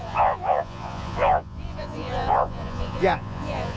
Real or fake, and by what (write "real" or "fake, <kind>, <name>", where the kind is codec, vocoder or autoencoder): fake, vocoder, Vocos